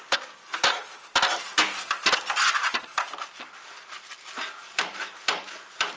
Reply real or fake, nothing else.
real